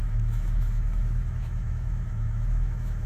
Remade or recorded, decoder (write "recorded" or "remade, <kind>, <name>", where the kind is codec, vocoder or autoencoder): remade, autoencoder, DAC-VAE